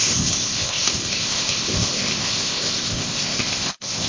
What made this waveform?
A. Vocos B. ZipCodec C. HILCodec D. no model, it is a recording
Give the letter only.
B